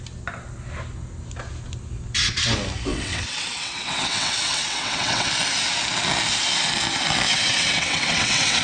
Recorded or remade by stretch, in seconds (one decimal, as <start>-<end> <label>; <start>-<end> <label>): 0.0-2.9 recorded; 2.9-5.3 remade; 5.3-7.3 recorded; 7.3-8.6 remade